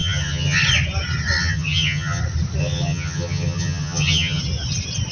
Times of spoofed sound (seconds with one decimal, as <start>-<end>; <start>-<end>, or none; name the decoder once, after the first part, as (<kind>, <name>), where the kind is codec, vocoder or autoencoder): 0.0-0.6 (vocoder, HiFi-GAN); 1.4-2.2; 2.6-4.4